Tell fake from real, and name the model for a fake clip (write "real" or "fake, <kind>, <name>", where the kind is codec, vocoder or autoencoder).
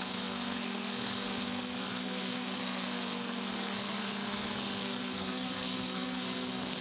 fake, codec, SNAC